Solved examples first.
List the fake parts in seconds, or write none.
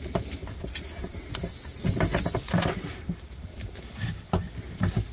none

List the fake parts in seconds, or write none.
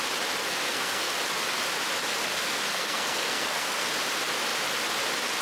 0.4-1.1 (codec, SNAC); 2.2-3.9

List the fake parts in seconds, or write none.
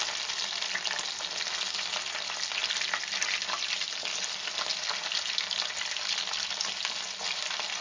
none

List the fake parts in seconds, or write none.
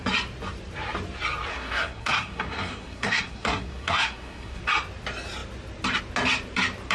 1.5-4.6 (codec, SNAC)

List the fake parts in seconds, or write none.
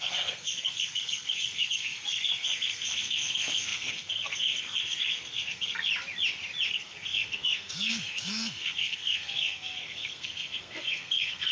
0.0-5.9 (codec, SNAC); 6.7-11.5